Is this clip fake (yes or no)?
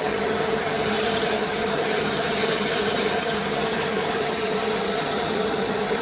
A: yes